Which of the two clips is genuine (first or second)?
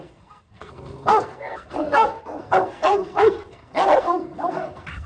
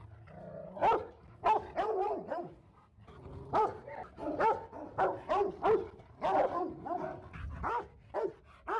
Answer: second